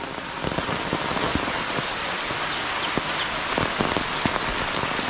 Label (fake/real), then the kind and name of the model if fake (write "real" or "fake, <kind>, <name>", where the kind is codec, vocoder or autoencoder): real